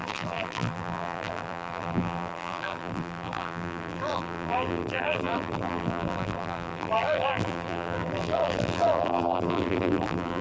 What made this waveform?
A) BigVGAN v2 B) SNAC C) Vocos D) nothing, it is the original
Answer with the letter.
A